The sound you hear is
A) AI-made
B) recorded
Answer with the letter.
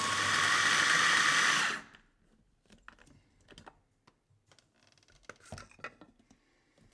B